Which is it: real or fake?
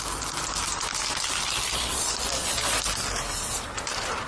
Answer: real